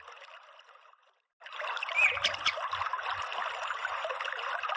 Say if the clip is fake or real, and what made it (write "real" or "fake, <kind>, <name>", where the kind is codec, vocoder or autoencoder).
real